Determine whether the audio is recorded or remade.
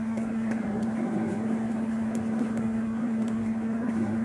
remade